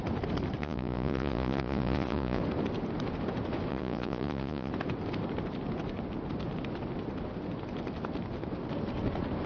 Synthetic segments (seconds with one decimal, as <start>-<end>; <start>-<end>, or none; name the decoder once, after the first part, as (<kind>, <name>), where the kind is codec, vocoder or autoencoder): 0.6-2.4 (vocoder, Vocos); 3.7-4.7